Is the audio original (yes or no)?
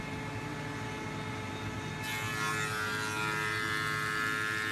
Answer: yes